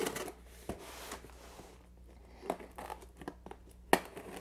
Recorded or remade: recorded